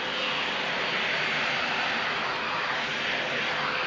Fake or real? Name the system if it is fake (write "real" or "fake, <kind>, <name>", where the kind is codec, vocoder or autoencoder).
real